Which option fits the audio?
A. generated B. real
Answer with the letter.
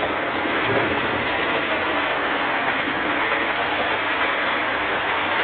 A